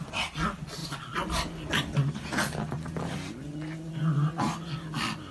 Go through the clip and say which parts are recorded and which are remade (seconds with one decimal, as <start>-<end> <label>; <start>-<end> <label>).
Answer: 0.0-5.3 recorded